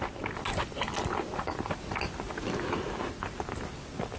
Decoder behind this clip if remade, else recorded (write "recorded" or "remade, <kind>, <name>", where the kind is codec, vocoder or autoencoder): recorded